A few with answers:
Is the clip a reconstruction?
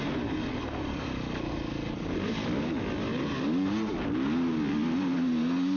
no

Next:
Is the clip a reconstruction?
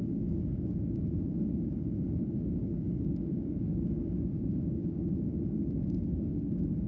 yes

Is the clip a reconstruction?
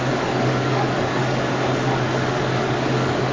yes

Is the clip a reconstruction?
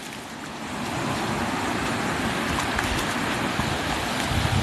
no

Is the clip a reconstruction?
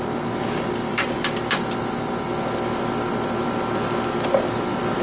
no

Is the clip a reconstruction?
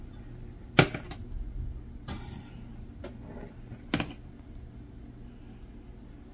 no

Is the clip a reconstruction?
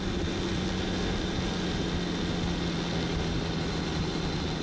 no